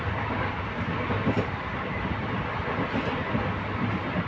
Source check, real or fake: real